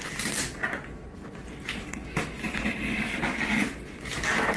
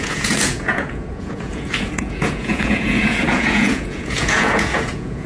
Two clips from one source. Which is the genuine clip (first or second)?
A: first